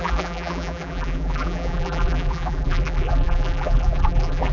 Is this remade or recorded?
remade